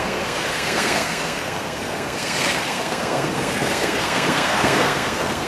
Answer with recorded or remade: remade